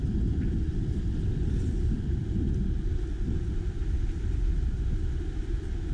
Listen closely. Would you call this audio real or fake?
real